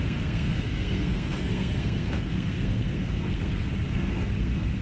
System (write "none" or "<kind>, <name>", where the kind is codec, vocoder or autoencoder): codec, SNAC